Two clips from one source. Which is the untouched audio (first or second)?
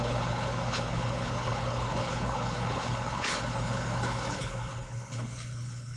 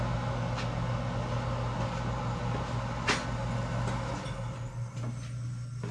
second